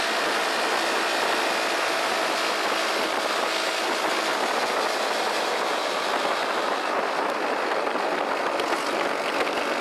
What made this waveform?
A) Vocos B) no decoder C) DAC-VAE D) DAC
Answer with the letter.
B